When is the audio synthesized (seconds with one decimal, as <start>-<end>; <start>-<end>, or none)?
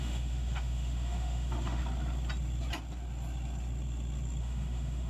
0.0-1.8; 4.4-5.1